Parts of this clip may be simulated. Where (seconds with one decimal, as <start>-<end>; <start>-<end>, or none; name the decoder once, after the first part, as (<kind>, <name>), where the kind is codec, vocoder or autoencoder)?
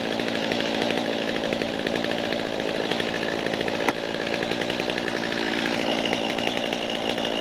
0.0-1.7 (autoencoder, DAC-VAE)